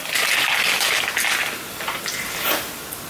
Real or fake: real